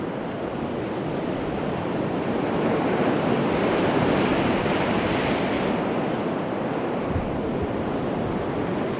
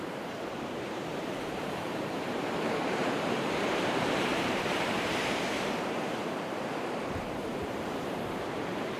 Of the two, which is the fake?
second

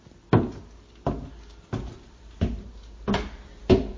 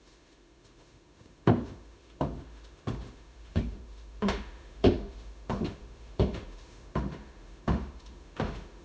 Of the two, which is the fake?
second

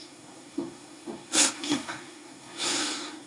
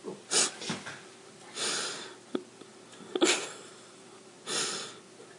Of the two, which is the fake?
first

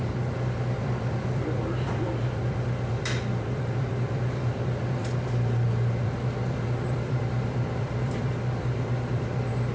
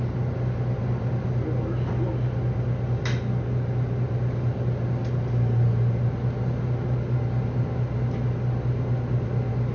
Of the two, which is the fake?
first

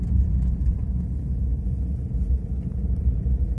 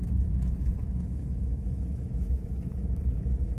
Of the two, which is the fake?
second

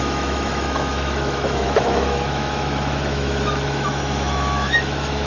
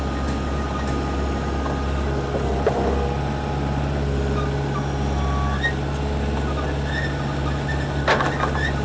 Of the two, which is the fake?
first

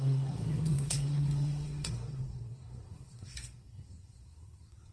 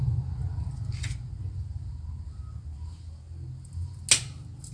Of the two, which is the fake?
first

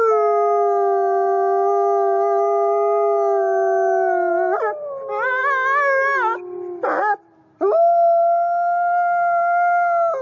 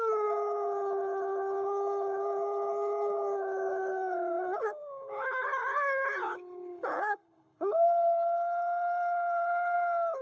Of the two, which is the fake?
second